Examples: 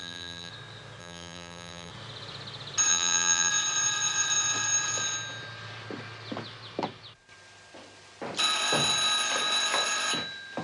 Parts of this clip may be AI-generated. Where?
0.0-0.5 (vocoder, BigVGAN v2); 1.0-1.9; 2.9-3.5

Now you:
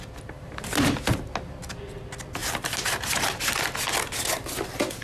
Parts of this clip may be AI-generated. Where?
2.4-3.2 (vocoder, BigVGAN v2)

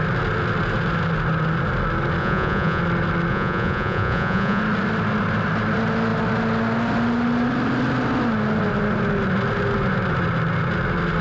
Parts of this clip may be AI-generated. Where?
2.2-2.8 (vocoder, Vocos); 3.3-4.6